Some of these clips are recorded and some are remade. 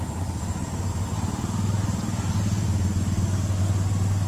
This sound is recorded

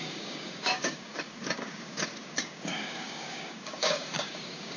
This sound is remade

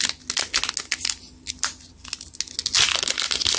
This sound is recorded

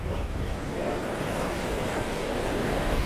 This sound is remade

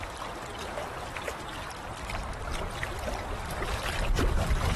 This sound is recorded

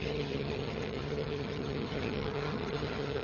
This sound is remade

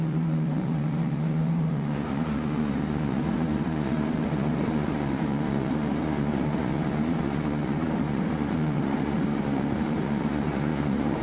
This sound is remade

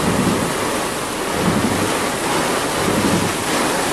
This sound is recorded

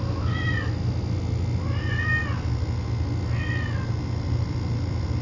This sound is recorded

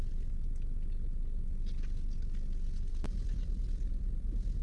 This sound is recorded